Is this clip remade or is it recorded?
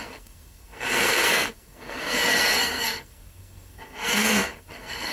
remade